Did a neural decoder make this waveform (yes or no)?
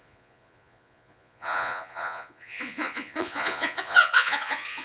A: yes